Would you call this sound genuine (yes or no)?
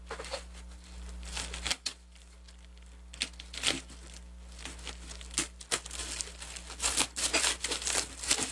yes